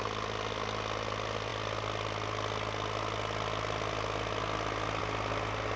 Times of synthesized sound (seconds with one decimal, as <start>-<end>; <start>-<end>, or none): none